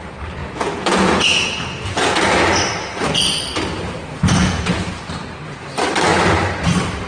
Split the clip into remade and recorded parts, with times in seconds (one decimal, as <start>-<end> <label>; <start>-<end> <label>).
0.0-0.4 recorded; 0.4-2.4 remade; 2.4-4.4 recorded; 4.4-4.9 remade; 4.9-7.1 recorded